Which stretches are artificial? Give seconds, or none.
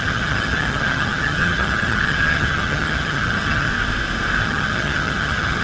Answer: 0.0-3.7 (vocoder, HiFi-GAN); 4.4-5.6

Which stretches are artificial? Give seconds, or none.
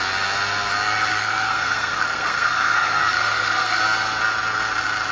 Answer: 1.1-3.8 (codec, SNAC)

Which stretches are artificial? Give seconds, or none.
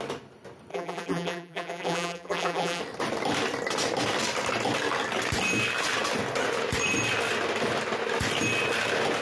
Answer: 0.7-2.8 (vocoder, BigVGAN v2)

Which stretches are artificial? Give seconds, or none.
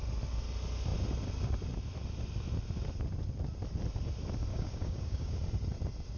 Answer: 4.5-5.4 (codec, DAC)